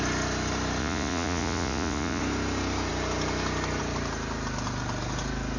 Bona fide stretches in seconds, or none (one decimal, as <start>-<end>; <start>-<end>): 0.0-0.8; 2.2-5.6